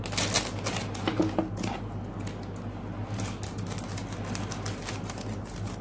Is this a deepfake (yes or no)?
no